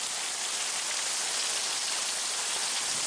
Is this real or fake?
real